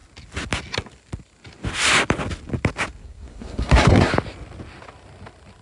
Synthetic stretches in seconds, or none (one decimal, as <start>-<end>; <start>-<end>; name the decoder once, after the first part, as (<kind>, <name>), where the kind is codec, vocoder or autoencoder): 3.0-4.1 (codec, SNAC)